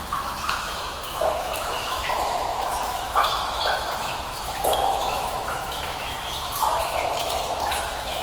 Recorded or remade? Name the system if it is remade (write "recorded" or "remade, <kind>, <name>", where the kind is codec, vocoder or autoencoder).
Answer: remade, autoencoder, DAC-VAE